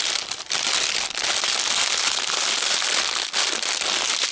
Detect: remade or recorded recorded